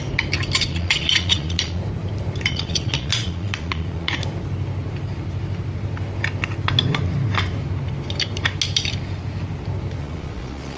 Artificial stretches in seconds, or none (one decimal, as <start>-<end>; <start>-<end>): 0.7-1.8; 2.5-4.1; 10.0-10.8